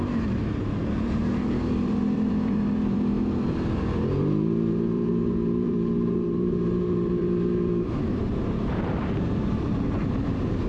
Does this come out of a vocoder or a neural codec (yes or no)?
yes